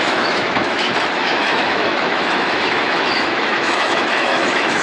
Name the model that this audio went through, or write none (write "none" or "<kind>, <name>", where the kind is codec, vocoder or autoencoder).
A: autoencoder, DAC-VAE